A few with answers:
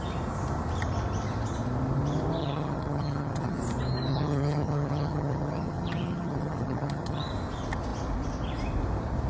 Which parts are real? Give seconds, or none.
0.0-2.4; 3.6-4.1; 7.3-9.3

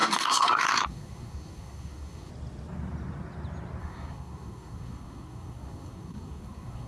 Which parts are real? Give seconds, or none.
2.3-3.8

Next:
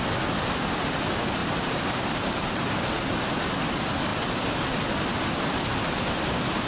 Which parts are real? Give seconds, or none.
0.0-1.4; 2.8-6.7